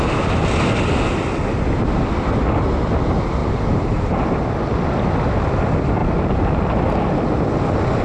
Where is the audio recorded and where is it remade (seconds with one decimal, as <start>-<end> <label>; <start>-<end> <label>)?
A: 0.0-3.4 recorded; 3.4-4.1 remade; 4.1-6.0 recorded; 6.0-6.5 remade; 6.5-8.0 recorded